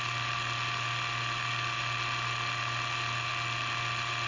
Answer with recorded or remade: recorded